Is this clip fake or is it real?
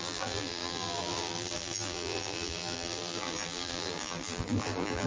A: fake